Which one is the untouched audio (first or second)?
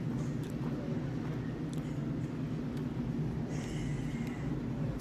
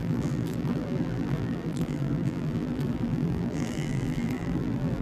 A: first